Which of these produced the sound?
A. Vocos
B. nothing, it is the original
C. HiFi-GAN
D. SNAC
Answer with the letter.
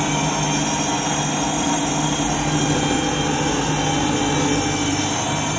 B